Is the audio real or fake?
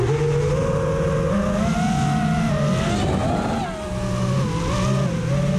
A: real